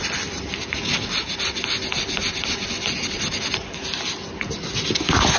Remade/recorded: recorded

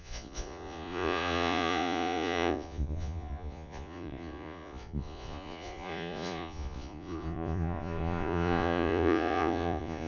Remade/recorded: remade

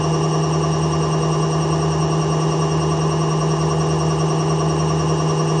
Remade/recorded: recorded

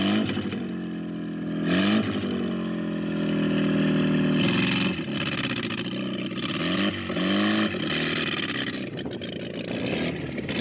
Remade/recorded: recorded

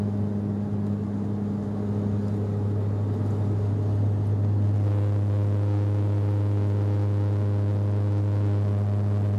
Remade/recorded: recorded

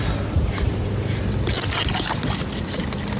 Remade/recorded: recorded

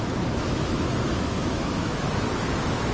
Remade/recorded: remade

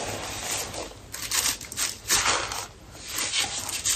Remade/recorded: recorded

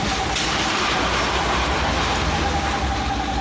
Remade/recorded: recorded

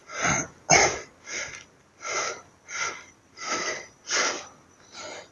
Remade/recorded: recorded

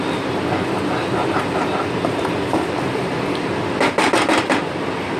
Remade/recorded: recorded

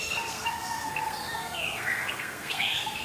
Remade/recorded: remade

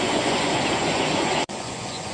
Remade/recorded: remade